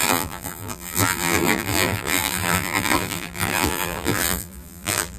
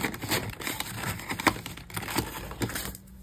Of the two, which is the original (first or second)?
second